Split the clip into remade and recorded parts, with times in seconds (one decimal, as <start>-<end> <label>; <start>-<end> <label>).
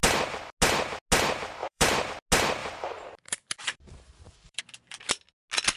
0.0-1.6 recorded; 1.6-2.1 remade; 2.1-2.6 recorded; 2.6-4.6 remade; 4.6-5.8 recorded